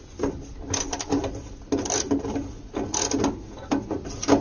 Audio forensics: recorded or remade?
recorded